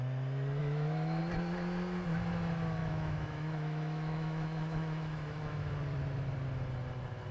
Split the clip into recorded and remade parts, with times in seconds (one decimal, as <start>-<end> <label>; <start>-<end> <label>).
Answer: 0.0-0.6 recorded; 0.6-1.2 remade; 1.2-2.8 recorded; 2.8-5.7 remade; 5.7-7.3 recorded